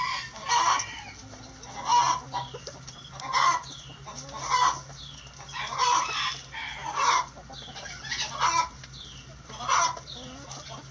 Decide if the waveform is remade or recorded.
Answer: recorded